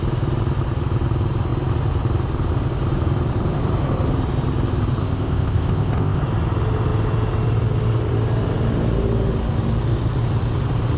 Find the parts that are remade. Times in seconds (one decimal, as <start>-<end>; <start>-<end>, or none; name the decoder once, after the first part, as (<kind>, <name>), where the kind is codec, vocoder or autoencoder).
5.0-6.2 (codec, ZipCodec)